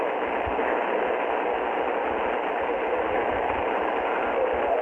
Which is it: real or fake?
real